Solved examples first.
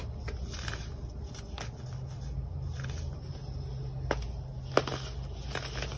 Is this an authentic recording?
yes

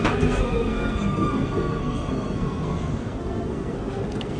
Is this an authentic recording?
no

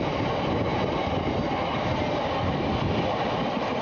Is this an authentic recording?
yes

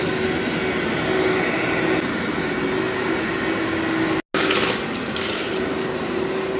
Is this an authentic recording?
yes